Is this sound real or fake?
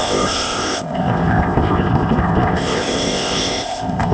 fake